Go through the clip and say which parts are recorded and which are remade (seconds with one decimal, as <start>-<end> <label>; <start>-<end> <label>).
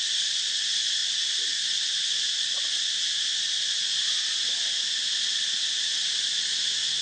0.0-7.0 recorded